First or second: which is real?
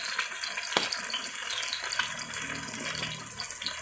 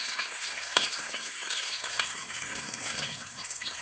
first